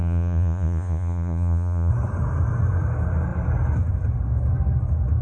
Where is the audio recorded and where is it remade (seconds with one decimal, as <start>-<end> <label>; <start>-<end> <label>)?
0.0-1.9 remade; 1.9-5.2 recorded